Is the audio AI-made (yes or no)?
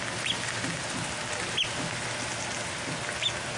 no